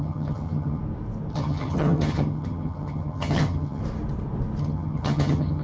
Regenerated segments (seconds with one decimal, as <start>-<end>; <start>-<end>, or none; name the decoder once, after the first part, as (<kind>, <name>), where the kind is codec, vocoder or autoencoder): 0.0-0.8 (vocoder, HiFi-GAN); 1.3-3.8; 4.6-5.6